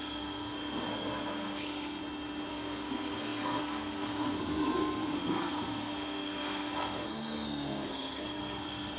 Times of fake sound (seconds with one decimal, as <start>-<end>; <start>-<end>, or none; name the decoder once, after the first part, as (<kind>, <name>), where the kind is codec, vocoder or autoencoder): 0.0-2.0 (codec, SNAC); 2.5-9.0